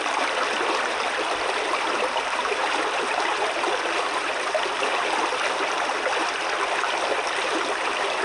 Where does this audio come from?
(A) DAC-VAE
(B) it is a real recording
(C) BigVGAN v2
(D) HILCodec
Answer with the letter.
C